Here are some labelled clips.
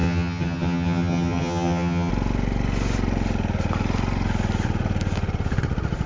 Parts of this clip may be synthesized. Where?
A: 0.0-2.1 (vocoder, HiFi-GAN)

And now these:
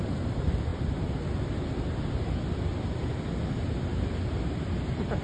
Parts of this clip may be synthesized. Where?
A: none